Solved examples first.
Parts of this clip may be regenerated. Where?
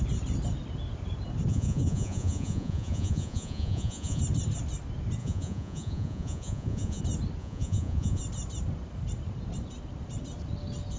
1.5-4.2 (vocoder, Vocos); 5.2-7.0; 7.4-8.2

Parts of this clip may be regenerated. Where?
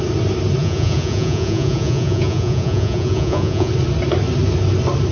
0.6-3.7 (vocoder, Vocos)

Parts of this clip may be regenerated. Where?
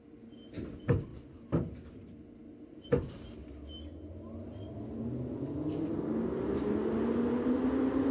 none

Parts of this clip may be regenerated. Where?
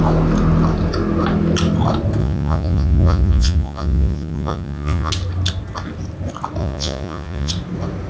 2.2-5.1 (vocoder, Vocos); 6.6-7.5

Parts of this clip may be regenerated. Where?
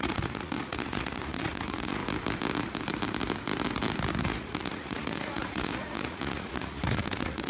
0.0-2.0 (vocoder, Vocos); 4.2-7.5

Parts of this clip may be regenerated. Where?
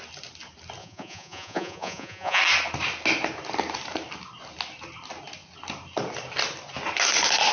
0.8-2.4 (vocoder, Vocos)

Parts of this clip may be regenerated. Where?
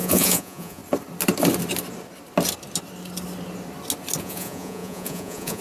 0.0-0.8 (vocoder, Vocos); 4.2-5.6